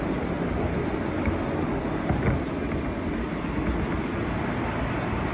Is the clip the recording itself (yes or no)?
yes